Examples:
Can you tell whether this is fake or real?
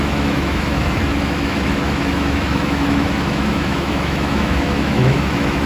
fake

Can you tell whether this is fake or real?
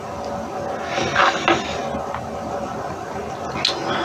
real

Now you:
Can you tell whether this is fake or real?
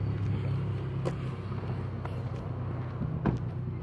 real